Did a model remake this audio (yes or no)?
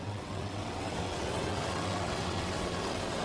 yes